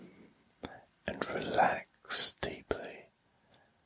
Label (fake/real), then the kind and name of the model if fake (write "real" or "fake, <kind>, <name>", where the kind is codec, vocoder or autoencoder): real